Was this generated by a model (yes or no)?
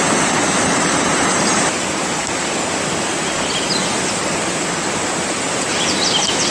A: no